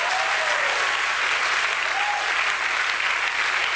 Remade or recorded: recorded